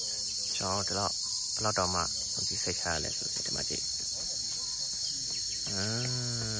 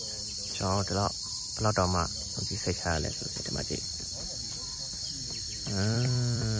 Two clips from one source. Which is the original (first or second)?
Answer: first